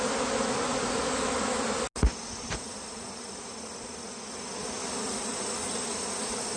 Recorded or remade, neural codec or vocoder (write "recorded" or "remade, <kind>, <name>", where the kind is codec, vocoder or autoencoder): recorded